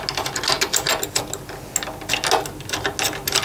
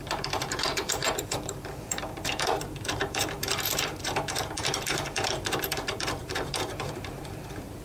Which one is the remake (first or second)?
second